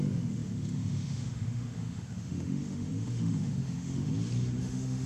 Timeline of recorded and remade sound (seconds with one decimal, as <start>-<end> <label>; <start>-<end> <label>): 0.0-4.1 remade; 4.1-4.6 recorded; 4.6-5.1 remade